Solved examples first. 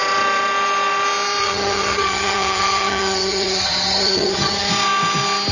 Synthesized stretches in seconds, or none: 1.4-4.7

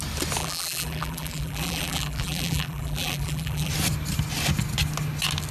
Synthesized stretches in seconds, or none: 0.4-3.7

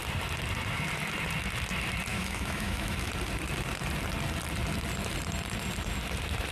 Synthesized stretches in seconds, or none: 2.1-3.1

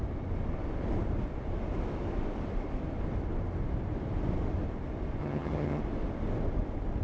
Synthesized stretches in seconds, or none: 5.2-5.8